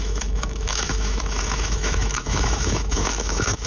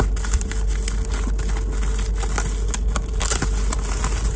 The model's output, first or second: first